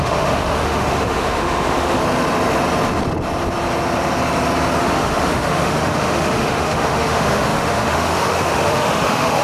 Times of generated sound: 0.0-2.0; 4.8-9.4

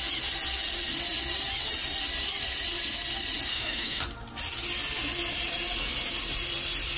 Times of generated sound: 3.5-4.0

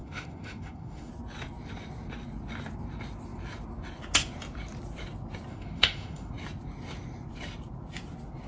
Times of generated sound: 0.0-1.1; 5.5-6.3

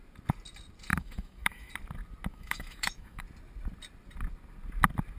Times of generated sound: 0.9-1.7; 2.3-3.2

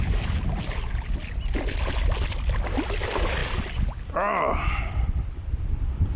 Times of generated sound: none

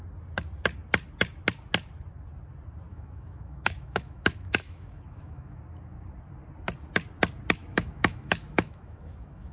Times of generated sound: 2.9-5.6; 7.6-9.5

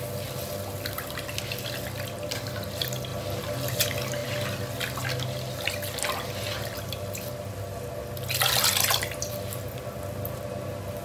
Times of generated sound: none